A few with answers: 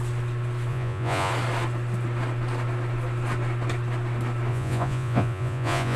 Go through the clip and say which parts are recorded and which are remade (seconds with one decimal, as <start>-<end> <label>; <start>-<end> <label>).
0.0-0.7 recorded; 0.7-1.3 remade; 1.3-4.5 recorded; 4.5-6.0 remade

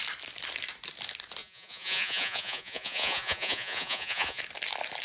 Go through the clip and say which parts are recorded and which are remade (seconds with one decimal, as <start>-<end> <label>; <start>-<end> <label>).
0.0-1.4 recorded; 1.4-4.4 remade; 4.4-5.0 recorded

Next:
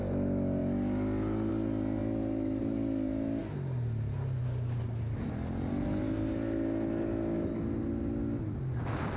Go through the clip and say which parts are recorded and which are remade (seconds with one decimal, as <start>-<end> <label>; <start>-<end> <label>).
0.0-9.2 recorded

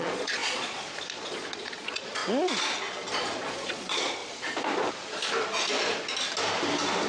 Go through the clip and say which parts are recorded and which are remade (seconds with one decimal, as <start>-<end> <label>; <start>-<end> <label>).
0.0-2.2 remade; 2.2-3.1 recorded; 3.1-4.2 remade; 4.2-7.1 recorded

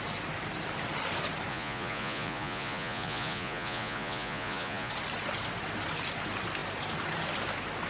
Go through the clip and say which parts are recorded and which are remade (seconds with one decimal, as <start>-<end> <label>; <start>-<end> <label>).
0.0-1.5 recorded; 1.5-4.9 remade; 4.9-7.9 recorded